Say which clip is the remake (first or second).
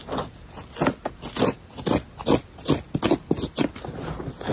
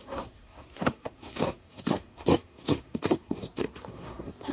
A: second